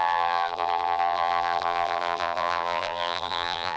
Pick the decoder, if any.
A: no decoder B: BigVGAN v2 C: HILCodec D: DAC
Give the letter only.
B